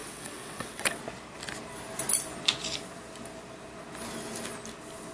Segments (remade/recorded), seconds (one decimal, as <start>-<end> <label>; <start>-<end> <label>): 0.0-1.0 remade; 1.0-5.1 recorded